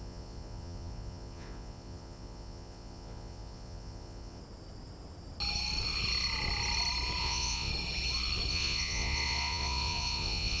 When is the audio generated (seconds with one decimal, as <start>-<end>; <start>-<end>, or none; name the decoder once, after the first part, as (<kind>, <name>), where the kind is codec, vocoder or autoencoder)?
0.0-4.4 (vocoder, Vocos); 7.2-7.7; 8.5-10.6